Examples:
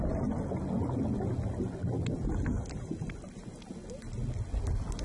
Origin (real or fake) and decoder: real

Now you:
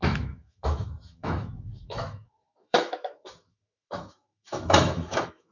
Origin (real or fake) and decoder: fake, autoencoder, DAC-VAE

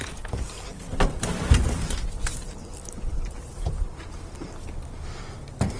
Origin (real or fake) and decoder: real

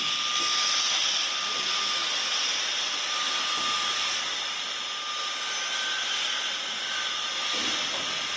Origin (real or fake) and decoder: real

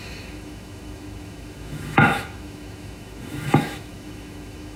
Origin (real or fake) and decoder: fake, autoencoder, DAC-VAE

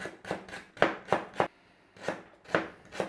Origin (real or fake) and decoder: real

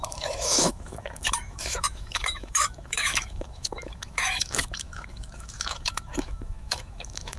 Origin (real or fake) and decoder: fake, autoencoder, DAC-VAE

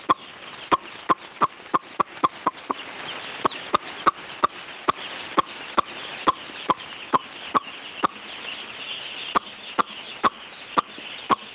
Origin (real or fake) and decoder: real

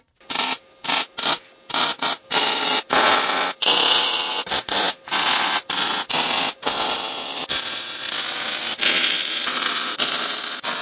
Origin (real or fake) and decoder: real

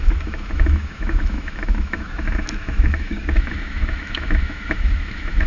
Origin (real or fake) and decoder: fake, autoencoder, DAC-VAE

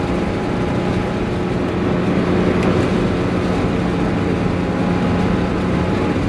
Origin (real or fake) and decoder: real